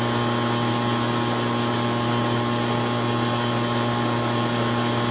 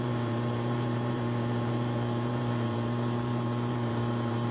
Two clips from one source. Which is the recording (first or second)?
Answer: first